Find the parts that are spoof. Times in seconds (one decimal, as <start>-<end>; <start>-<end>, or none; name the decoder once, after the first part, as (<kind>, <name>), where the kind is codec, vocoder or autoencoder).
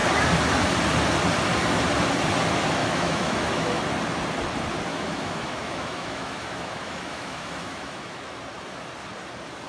2.8-3.8 (autoencoder, DAC-VAE); 4.9-8.4